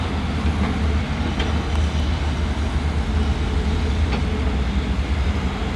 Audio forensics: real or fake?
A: real